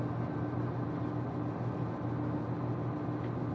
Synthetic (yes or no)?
no